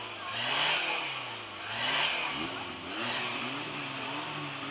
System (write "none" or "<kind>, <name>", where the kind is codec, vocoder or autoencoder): none